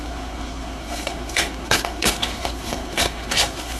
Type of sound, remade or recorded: remade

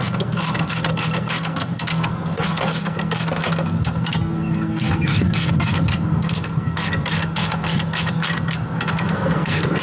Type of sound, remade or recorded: remade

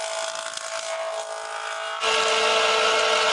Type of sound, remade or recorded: recorded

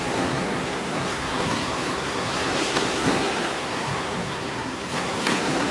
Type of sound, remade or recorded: remade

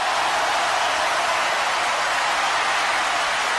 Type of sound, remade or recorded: recorded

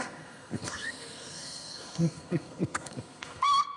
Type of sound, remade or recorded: remade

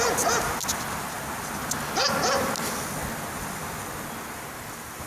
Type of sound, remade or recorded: recorded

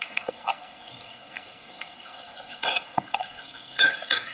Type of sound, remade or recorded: remade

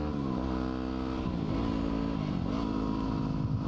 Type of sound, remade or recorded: recorded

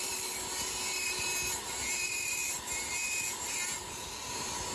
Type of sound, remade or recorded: recorded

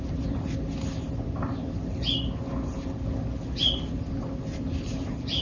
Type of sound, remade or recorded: recorded